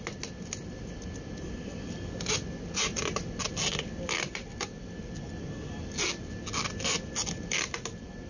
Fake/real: real